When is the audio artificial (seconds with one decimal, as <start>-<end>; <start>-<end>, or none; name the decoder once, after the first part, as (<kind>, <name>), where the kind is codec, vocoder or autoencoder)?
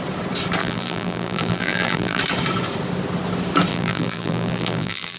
0.6-2.2 (vocoder, BigVGAN v2); 3.7-5.2